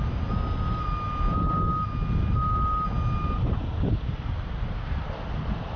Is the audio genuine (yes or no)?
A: yes